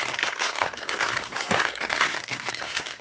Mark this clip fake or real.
fake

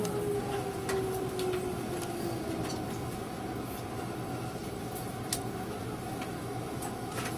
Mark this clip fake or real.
real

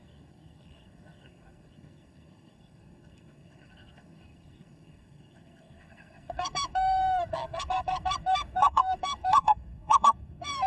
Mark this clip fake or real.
fake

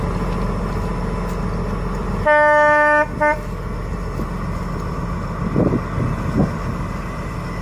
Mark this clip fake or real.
real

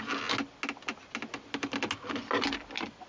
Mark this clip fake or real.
real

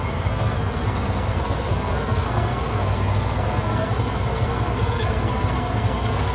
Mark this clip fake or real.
fake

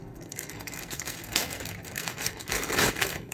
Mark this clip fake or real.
fake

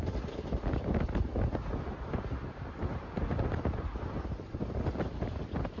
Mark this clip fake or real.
real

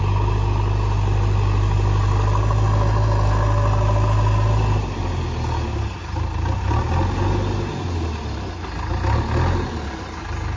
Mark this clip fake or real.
real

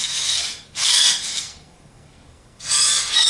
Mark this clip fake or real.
fake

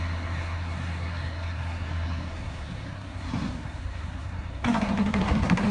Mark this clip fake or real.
fake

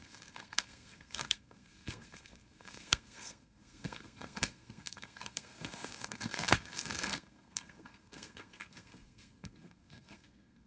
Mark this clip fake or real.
fake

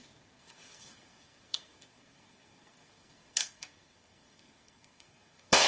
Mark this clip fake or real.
fake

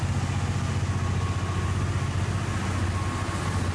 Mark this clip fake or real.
real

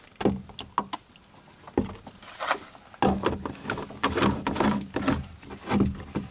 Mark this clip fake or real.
real